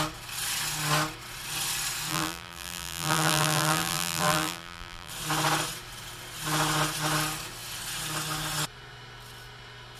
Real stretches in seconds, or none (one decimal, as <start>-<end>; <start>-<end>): 0.0-2.1; 5.1-10.0